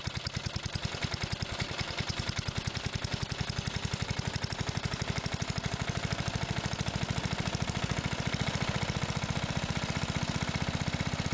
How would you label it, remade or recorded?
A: recorded